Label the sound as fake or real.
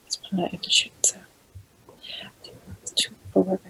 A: real